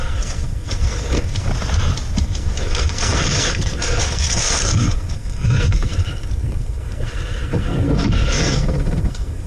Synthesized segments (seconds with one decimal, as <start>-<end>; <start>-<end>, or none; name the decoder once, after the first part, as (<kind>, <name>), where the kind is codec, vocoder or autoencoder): 0.0-1.5 (codec, SNAC); 2.2-9.5

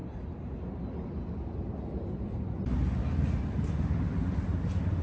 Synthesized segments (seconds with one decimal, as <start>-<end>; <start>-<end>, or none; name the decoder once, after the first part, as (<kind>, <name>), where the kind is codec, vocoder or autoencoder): none

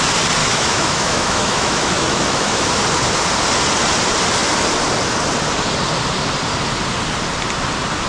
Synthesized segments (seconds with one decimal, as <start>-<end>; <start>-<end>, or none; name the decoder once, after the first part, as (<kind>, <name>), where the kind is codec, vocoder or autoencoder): 0.4-2.7 (autoencoder, DAC-VAE)